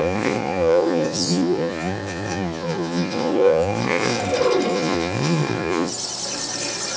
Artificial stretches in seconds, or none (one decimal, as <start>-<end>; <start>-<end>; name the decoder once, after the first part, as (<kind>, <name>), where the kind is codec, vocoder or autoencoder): 0.0-4.2 (vocoder, Vocos); 4.7-5.9